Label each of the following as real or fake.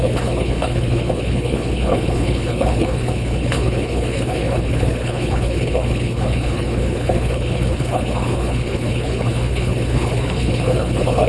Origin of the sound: fake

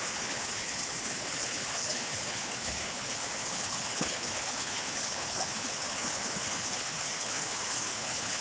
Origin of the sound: fake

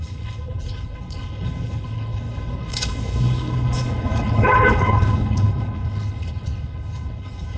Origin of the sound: fake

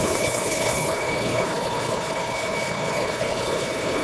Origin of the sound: fake